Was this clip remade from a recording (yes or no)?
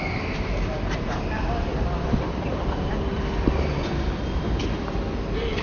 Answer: no